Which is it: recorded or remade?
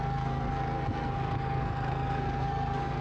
remade